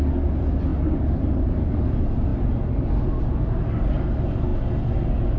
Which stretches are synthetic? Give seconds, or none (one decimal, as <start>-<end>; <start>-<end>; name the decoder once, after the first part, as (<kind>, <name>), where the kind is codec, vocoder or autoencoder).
none